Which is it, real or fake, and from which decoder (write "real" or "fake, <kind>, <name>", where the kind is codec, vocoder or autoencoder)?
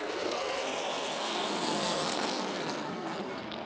fake, codec, SNAC